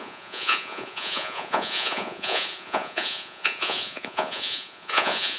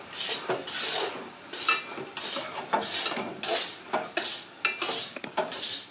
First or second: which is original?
second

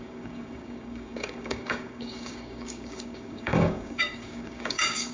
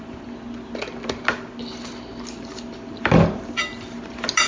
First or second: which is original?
second